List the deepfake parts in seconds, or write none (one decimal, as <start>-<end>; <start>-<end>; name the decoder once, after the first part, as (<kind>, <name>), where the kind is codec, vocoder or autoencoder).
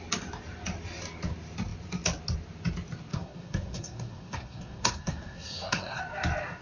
3.1-6.0 (codec, SNAC)